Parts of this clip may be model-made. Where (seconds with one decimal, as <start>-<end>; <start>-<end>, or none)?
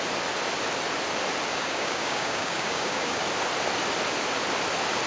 1.5-3.2